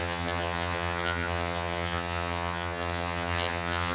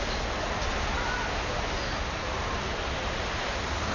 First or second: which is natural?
second